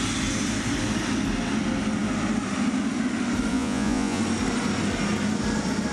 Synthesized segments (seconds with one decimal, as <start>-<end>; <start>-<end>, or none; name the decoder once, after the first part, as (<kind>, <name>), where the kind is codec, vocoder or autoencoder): 3.5-4.2 (vocoder, Vocos)